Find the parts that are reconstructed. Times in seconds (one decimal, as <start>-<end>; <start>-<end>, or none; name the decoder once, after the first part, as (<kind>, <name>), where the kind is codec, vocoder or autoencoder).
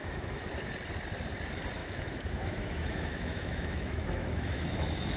0.0-0.5 (autoencoder, DAC-VAE); 1.8-5.2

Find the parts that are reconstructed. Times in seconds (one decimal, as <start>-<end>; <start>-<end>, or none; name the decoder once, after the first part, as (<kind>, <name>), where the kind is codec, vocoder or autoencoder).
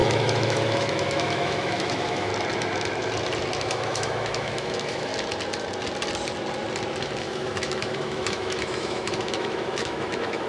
0.0-2.3 (autoencoder, DAC-VAE); 3.6-5.1; 7.2-10.5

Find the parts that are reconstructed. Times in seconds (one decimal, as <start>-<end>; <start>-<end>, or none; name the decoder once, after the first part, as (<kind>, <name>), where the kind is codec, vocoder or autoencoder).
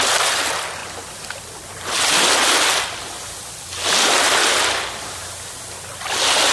none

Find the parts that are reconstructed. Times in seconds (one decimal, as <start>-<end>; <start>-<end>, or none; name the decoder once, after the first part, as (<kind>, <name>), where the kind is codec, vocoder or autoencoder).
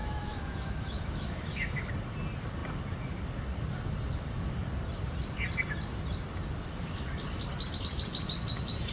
0.0-1.9 (autoencoder, DAC-VAE)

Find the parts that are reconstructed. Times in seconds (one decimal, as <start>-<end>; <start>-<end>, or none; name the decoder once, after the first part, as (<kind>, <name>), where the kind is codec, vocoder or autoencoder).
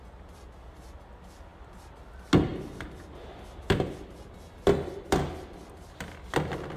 none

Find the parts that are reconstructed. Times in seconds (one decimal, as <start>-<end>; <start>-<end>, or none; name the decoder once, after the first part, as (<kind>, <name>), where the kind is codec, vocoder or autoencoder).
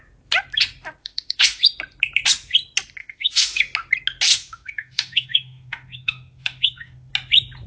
1.0-1.6 (autoencoder, DAC-VAE); 3.0-3.6; 4.3-7.1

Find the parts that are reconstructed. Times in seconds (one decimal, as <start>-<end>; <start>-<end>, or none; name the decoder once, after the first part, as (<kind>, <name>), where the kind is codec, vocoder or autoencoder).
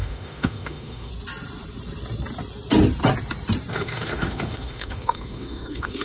0.0-1.1 (autoencoder, DAC-VAE); 3.7-6.0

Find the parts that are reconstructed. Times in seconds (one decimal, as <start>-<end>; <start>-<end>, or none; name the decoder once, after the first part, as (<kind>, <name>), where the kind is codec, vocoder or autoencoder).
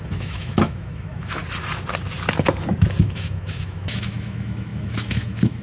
0.0-1.4 (autoencoder, DAC-VAE); 3.0-5.6